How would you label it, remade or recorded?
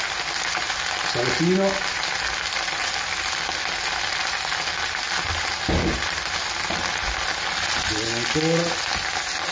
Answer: recorded